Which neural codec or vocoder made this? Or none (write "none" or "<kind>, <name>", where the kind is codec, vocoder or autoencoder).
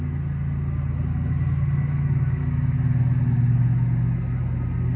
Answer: none